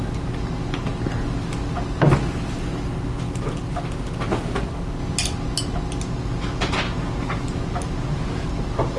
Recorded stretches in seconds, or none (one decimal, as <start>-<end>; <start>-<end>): 0.0-9.0